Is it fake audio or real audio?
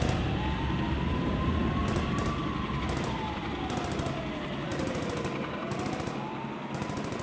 real